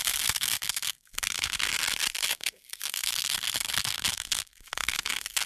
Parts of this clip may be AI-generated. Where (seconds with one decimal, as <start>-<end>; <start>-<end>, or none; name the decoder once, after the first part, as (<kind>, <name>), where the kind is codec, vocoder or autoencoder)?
0.0-1.7 (codec, SNAC); 2.3-5.5